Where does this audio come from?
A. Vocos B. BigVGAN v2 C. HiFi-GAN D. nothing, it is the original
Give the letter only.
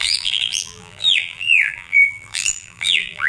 B